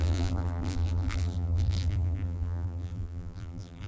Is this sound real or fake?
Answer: fake